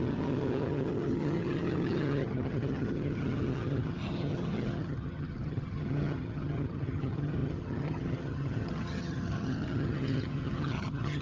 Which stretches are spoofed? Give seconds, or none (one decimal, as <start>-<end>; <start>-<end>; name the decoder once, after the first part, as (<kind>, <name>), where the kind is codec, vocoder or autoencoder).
0.0-11.2 (vocoder, HiFi-GAN)